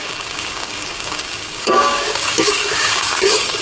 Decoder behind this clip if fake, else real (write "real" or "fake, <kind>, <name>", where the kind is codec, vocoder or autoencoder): fake, codec, DAC